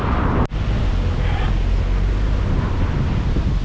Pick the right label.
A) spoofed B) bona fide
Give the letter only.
B